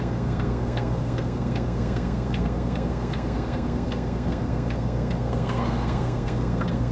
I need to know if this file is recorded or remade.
remade